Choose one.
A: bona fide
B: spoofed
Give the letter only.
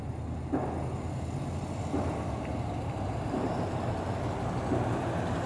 A